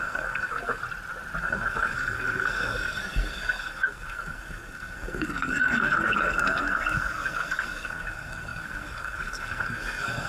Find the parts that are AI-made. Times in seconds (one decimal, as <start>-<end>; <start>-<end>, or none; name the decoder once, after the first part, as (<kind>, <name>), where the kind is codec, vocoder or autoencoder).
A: 0.0-0.8 (codec, SNAC); 1.4-10.3